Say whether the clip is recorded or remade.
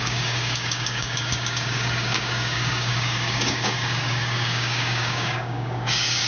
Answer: remade